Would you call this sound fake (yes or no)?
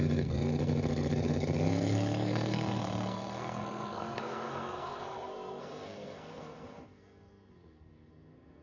yes